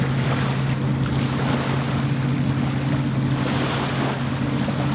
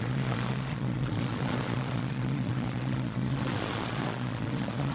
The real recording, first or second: first